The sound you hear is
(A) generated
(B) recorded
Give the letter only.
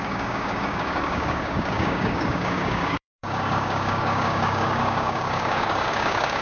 A